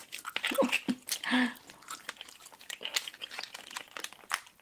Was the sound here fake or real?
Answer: real